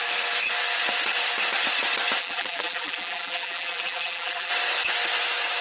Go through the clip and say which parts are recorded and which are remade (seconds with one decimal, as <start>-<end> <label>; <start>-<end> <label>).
0.0-2.2 recorded; 2.2-4.5 remade; 4.5-5.6 recorded